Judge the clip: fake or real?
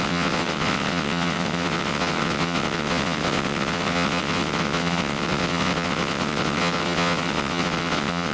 fake